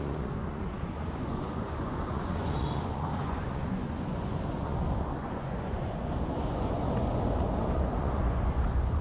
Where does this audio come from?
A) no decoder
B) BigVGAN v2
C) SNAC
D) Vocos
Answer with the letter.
D